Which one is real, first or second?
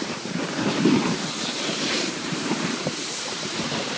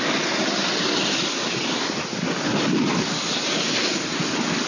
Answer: second